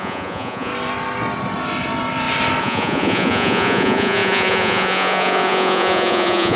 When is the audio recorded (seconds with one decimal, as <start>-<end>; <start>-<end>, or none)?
0.7-2.6